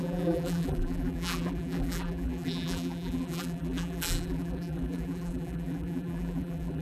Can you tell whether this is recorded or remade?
remade